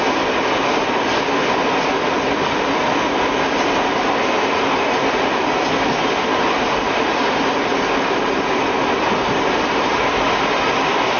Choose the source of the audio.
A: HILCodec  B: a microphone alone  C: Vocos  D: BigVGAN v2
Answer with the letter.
D